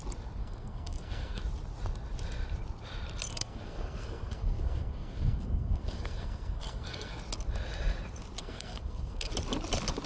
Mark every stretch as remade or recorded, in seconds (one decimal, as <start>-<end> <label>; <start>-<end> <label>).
0.0-0.4 recorded; 0.4-1.4 remade; 1.4-3.3 recorded; 3.3-7.2 remade; 7.2-8.4 recorded; 8.4-9.3 remade; 9.3-10.1 recorded